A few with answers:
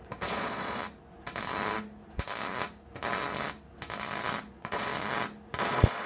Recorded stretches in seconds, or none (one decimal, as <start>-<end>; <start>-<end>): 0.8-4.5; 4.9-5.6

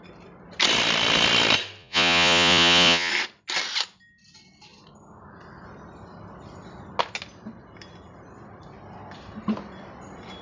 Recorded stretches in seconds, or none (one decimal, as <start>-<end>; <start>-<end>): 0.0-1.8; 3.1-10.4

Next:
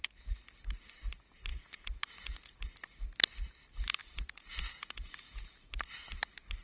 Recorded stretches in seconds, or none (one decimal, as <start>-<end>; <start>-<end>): 0.0-1.5; 2.6-4.0; 5.4-6.6

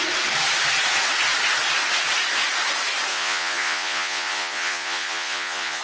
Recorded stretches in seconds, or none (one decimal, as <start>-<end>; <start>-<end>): 0.0-3.1

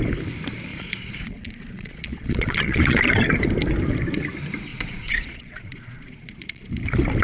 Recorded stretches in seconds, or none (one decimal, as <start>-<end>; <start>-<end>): 0.0-0.7; 3.0-4.7; 6.6-7.2